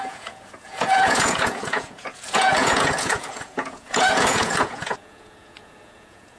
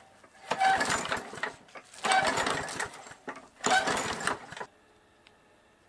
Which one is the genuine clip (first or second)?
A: second